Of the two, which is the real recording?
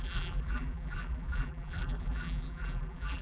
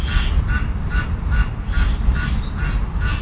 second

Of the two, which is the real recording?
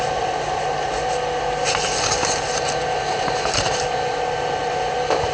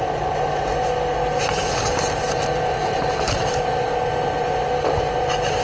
second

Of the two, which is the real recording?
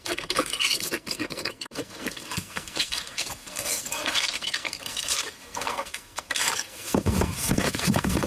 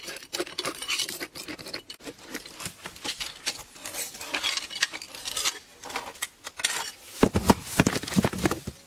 second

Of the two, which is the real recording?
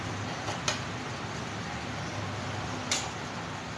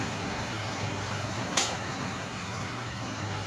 first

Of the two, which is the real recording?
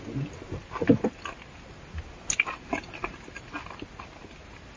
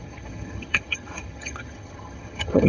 first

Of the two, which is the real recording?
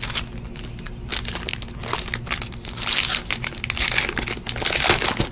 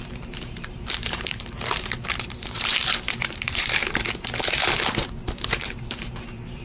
first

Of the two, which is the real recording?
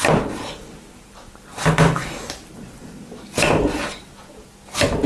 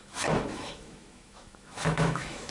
first